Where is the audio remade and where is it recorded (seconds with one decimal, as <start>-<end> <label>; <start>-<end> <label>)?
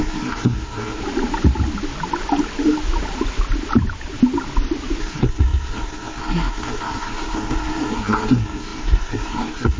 0.0-1.0 remade; 1.0-5.0 recorded; 5.0-9.8 remade